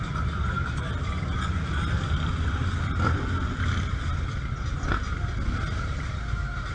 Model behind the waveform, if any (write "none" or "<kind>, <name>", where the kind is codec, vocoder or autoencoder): none